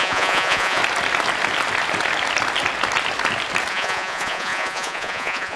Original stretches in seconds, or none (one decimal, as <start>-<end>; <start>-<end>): 0.8-3.7